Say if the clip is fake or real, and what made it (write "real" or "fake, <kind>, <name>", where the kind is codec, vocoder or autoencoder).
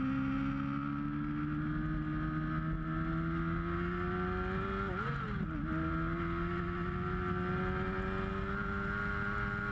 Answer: real